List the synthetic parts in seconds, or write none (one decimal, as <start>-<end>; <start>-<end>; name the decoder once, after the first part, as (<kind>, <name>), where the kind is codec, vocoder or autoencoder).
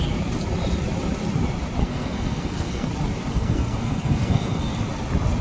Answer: 1.8-2.9 (codec, SNAC); 3.3-4.7